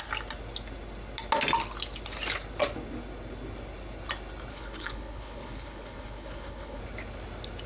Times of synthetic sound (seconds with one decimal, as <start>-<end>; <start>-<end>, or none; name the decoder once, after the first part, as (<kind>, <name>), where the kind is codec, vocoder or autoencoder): 4.5-6.8 (codec, HILCodec)